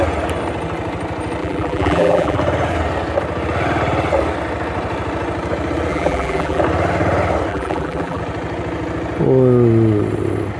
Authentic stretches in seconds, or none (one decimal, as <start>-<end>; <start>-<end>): 0.0-1.4; 2.4-5.9; 6.6-7.5; 8.2-10.6